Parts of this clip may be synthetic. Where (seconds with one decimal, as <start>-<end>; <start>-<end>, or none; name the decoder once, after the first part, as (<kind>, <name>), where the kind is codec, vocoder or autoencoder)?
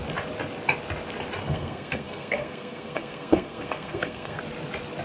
1.4-4.4 (codec, SNAC)